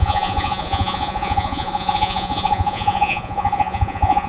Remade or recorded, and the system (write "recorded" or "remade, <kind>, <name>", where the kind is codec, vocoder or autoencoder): remade, vocoder, Vocos